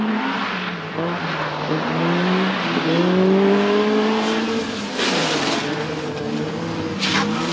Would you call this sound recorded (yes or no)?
yes